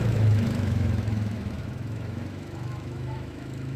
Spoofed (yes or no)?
yes